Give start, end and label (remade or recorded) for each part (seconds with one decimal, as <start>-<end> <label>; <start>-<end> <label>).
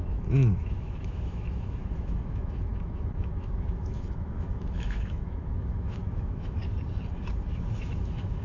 0.0-6.6 remade; 6.6-7.9 recorded; 7.9-8.4 remade